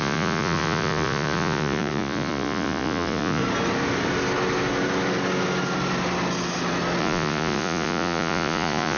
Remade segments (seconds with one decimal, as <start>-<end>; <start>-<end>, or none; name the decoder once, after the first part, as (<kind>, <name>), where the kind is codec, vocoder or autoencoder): 0.0-3.4 (vocoder, Vocos); 7.0-9.0